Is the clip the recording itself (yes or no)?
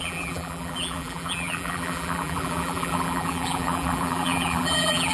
no